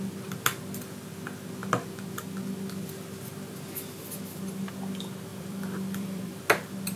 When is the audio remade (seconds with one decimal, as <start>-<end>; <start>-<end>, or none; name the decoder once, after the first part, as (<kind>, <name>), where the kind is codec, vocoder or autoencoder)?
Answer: 5.3-6.4 (vocoder, BigVGAN v2)

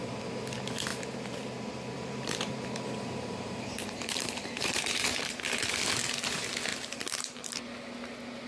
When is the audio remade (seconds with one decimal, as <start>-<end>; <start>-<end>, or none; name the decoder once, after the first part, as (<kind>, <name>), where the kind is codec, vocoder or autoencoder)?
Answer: 0.9-5.7 (vocoder, BigVGAN v2); 6.7-7.5

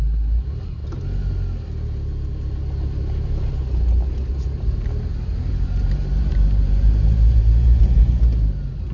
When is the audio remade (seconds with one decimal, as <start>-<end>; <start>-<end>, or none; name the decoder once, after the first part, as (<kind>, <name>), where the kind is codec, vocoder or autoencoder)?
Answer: 5.1-7.9 (vocoder, BigVGAN v2)

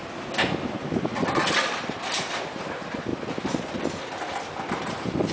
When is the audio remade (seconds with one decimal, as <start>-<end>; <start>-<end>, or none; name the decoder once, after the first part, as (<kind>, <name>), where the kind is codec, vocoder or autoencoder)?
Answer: 0.7-3.1 (vocoder, BigVGAN v2); 4.7-5.3